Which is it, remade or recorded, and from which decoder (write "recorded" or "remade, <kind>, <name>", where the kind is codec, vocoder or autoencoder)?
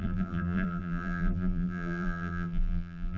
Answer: remade, vocoder, BigVGAN v2